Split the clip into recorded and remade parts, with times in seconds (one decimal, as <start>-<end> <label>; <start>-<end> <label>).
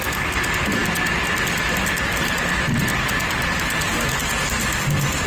0.0-5.3 recorded